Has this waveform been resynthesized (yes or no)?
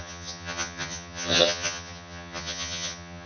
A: yes